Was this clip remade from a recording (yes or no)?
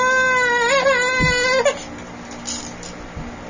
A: no